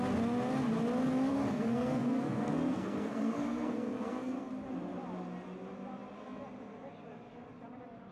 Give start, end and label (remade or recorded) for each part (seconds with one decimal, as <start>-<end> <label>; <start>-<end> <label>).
0.0-1.3 recorded; 1.3-4.5 remade; 4.5-8.1 recorded